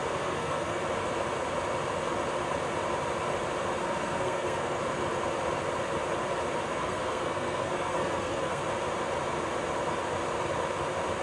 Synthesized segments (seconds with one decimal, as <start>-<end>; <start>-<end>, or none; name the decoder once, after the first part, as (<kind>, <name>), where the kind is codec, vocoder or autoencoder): 0.0-0.8 (codec, SNAC); 3.8-4.8; 6.7-8.6